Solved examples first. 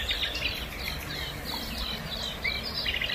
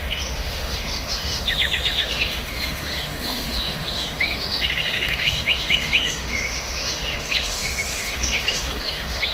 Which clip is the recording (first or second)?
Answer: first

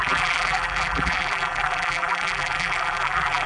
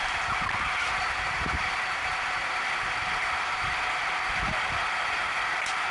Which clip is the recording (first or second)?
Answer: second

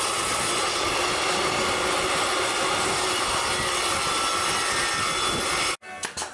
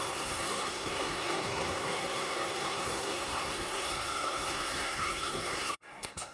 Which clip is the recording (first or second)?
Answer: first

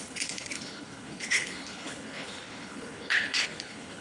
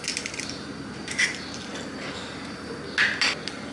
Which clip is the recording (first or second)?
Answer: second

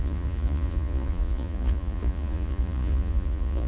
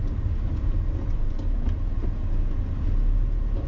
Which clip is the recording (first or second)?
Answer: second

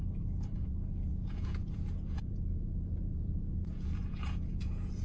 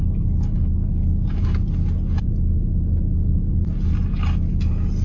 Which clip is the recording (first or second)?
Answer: second